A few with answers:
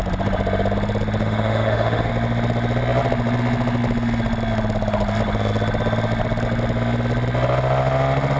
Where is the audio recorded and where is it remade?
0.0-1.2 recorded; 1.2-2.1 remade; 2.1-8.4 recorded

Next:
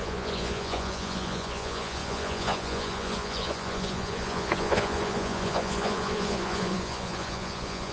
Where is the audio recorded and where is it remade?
0.0-7.9 remade

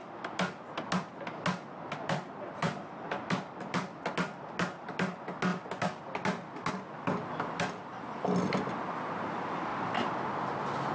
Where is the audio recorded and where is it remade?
0.0-10.9 recorded

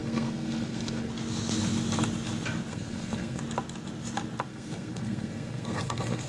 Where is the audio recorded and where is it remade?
0.0-1.1 remade; 1.1-2.7 recorded; 2.7-3.4 remade; 3.4-4.5 recorded; 4.5-6.3 remade

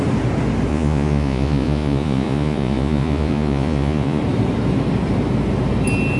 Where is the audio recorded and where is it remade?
0.0-0.7 recorded; 0.7-4.2 remade; 4.2-6.2 recorded